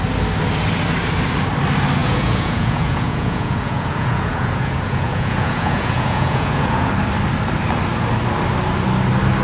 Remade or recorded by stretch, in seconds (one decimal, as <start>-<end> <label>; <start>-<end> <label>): 0.0-2.0 recorded; 2.0-6.9 remade; 6.9-9.4 recorded